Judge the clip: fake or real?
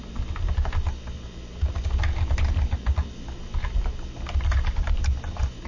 real